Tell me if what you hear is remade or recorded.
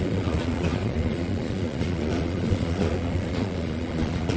remade